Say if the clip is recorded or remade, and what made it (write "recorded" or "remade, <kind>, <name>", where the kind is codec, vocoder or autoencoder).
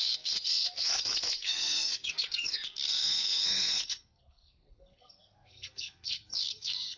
remade, codec, SNAC